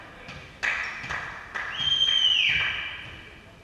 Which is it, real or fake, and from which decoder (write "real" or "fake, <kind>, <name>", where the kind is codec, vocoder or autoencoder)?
real